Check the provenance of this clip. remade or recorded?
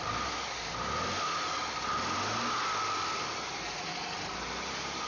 recorded